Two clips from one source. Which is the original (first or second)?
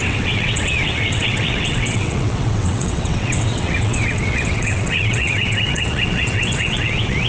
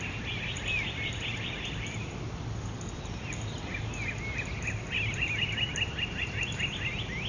second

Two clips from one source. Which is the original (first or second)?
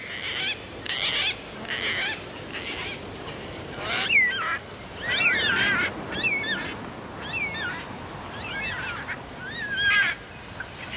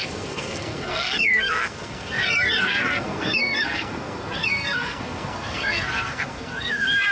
first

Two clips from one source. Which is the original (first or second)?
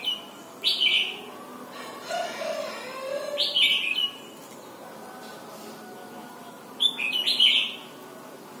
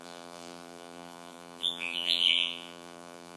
first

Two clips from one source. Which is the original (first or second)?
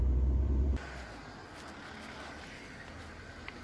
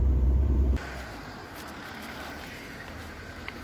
first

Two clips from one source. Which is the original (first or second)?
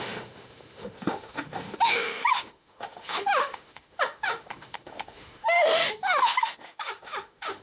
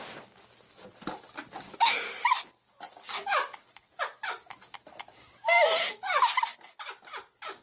second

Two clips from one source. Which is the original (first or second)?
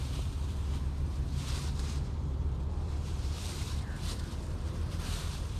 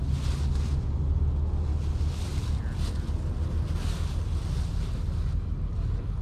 second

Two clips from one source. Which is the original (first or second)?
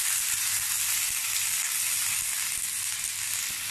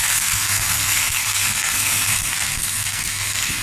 first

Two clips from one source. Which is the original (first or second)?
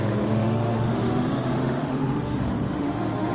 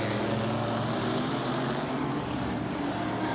second